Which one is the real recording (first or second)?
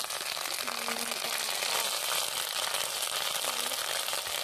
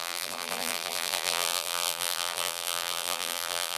first